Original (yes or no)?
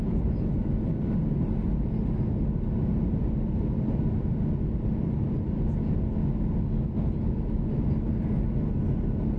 yes